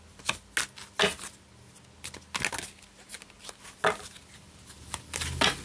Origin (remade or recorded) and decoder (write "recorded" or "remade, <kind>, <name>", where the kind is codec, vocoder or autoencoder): recorded